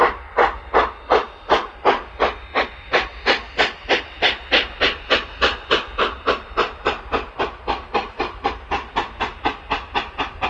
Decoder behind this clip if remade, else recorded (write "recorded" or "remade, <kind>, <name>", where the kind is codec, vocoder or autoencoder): recorded